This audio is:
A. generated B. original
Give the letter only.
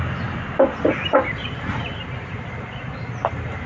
B